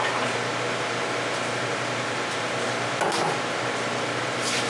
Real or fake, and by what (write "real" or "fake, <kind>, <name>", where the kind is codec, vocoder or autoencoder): real